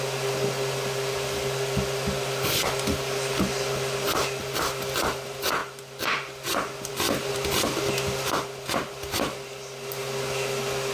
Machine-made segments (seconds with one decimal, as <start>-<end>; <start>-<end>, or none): none